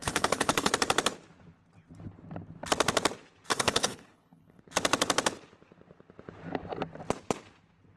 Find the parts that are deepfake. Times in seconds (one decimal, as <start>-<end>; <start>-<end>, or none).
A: 0.0-0.7; 3.5-4.6